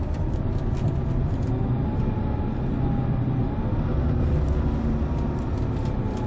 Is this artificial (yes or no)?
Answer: no